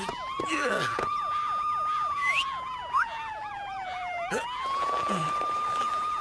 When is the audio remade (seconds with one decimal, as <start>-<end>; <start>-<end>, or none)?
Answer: 0.0-5.2; 5.8-6.2

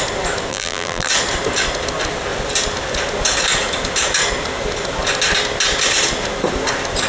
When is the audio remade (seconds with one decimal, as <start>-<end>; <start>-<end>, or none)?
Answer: 0.5-1.1

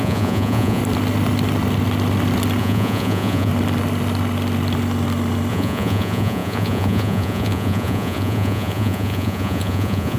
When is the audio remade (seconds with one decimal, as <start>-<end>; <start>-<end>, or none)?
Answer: 0.0-0.8; 2.6-3.5; 5.5-10.2

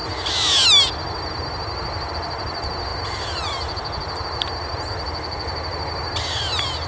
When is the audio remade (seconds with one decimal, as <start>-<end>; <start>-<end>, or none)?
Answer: none

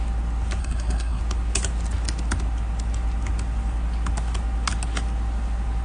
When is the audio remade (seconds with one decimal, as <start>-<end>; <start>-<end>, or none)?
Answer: 0.6-1.2